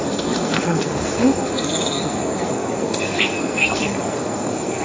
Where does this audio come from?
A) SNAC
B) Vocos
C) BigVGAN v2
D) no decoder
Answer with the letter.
A